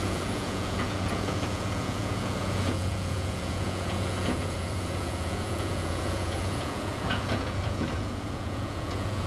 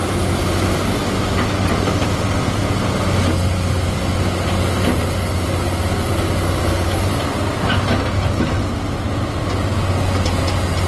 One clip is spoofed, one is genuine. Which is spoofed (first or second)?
first